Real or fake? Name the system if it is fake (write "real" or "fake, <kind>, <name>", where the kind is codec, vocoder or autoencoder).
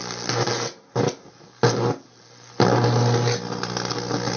real